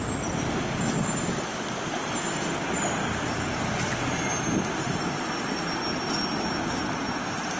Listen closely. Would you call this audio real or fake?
real